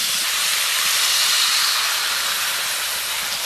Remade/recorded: recorded